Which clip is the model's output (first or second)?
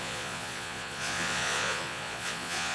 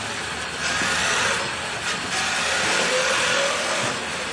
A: first